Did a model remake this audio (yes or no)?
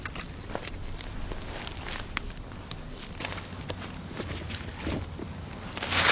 no